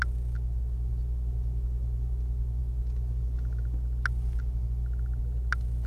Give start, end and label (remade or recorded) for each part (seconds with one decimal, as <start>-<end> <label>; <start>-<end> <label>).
0.0-5.9 recorded